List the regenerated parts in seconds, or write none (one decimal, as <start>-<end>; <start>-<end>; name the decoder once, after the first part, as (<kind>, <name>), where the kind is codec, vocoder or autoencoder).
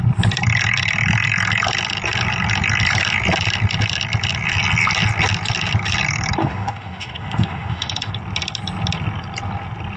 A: 6.4-8.1 (autoencoder, DAC-VAE)